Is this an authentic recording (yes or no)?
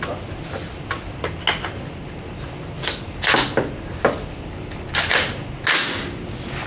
yes